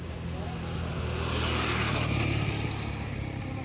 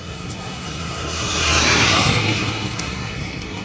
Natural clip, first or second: first